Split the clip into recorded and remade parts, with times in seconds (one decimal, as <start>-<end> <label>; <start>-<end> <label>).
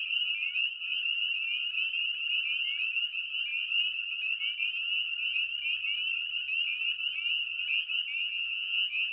0.0-8.2 recorded; 8.2-9.1 remade